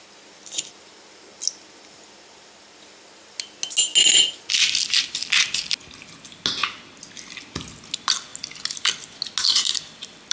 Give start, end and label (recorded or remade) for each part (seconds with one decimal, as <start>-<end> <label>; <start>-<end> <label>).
0.0-10.3 recorded